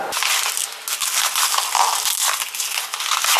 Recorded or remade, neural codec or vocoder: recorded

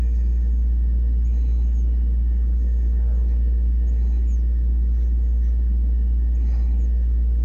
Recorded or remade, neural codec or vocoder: recorded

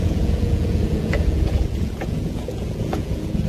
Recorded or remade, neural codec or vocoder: remade, vocoder, Vocos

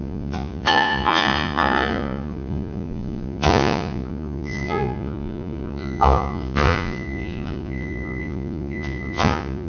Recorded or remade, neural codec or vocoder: remade, vocoder, Vocos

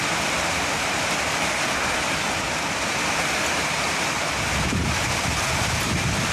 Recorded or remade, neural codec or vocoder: recorded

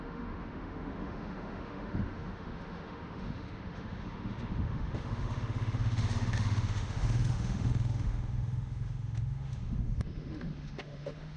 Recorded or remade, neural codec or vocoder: remade, autoencoder, DAC-VAE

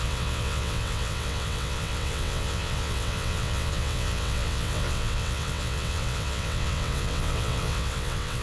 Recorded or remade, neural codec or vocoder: remade, vocoder, WaveNeXt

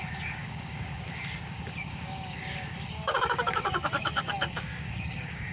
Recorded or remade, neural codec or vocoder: remade, codec, DAC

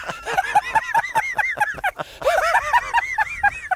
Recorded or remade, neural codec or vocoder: recorded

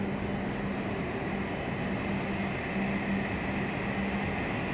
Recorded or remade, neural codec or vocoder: recorded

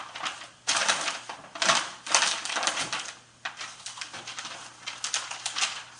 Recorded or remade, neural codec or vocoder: recorded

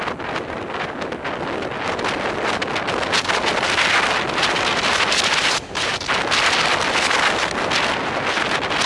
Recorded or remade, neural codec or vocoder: recorded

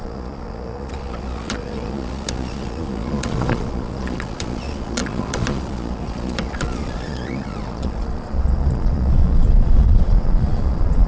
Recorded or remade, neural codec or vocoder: remade, vocoder, Vocos